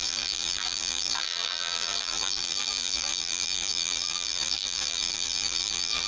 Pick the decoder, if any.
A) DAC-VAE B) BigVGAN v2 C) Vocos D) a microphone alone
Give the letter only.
B